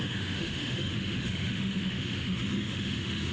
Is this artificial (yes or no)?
yes